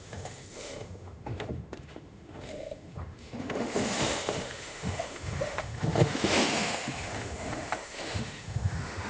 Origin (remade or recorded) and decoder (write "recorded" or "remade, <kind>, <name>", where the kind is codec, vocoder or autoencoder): remade, autoencoder, DAC-VAE